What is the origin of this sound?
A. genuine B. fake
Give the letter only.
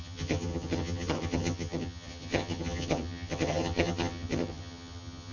B